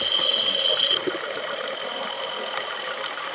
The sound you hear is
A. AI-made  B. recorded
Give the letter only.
B